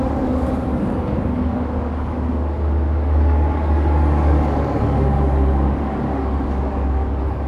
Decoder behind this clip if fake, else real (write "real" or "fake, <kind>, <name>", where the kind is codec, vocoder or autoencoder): fake, codec, DAC